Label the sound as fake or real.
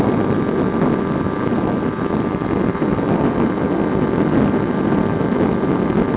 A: real